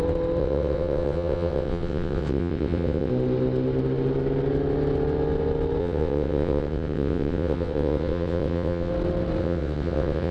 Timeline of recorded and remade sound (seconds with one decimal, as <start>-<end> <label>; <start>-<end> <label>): 0.0-0.4 recorded; 0.4-3.1 remade; 3.1-5.8 recorded; 5.8-8.9 remade; 8.9-9.4 recorded; 9.4-10.3 remade